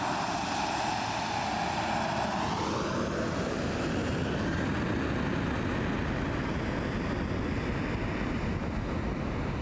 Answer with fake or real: real